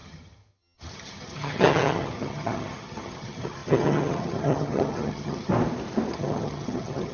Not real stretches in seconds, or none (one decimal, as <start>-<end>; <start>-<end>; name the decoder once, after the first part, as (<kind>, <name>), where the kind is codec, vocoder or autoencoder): 0.0-5.5 (vocoder, HiFi-GAN); 6.1-7.1

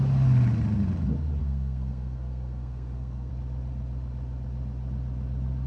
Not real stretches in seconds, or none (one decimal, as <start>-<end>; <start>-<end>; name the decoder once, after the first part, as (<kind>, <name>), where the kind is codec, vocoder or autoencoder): 1.4-3.3 (codec, SNAC)

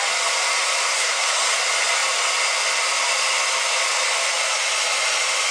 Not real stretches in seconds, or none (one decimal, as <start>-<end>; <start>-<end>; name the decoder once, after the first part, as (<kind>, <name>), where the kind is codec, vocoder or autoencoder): 0.9-1.6 (codec, SNAC)

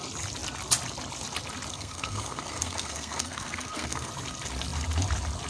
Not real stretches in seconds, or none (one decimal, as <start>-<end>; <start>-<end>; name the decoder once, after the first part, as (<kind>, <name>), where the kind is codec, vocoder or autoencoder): 1.7-4.1 (codec, SNAC)

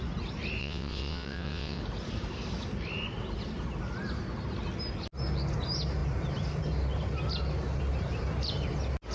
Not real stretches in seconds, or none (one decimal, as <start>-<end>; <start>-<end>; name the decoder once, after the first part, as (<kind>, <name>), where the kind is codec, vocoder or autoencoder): 0.6-1.8 (vocoder, WaveNeXt)

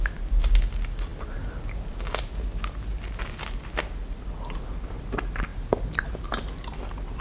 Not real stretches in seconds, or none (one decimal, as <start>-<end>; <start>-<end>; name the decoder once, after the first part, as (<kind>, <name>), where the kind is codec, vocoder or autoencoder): none